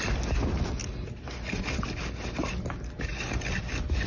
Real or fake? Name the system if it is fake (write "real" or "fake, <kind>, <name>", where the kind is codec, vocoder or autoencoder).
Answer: real